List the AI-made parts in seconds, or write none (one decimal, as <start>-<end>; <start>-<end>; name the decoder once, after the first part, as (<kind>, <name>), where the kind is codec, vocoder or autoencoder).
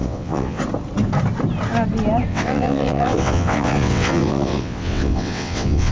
0.0-0.6 (vocoder, WaveNeXt); 2.3-5.9